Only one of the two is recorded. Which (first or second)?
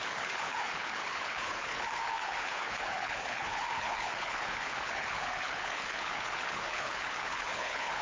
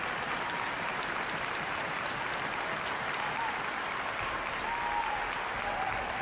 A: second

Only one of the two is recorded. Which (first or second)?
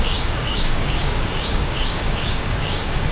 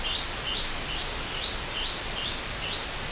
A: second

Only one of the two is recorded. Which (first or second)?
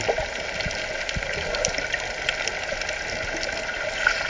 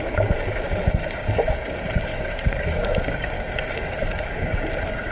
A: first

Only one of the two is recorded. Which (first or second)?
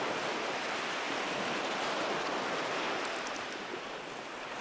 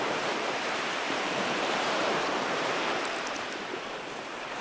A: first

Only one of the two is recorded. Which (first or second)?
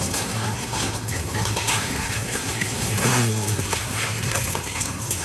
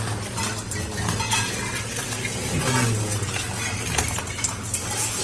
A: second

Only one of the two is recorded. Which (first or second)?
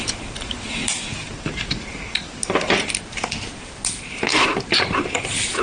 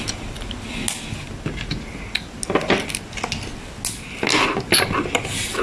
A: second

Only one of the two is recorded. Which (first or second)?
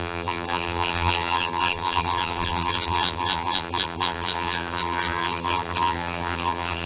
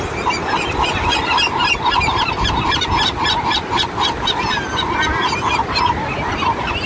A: second